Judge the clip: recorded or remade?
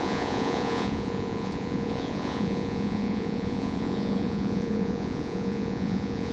remade